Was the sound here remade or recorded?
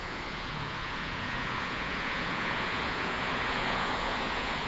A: remade